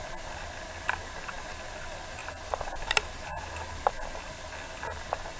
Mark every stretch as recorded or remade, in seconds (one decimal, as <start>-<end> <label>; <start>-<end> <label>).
0.0-5.4 recorded